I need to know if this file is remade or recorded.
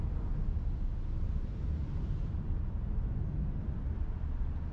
recorded